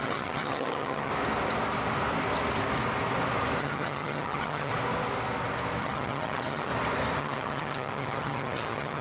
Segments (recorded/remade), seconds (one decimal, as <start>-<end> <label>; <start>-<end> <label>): 0.0-1.1 remade; 1.1-3.6 recorded; 3.6-4.7 remade; 4.7-5.8 recorded; 5.8-6.7 remade; 6.7-7.2 recorded; 7.2-9.0 remade